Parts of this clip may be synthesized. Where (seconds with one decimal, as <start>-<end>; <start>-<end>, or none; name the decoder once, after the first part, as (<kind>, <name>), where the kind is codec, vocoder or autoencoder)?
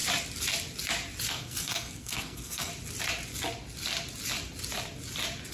1.3-2.7 (codec, SNAC)